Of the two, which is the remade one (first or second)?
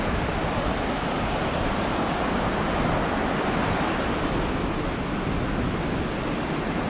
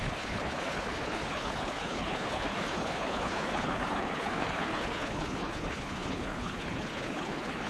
second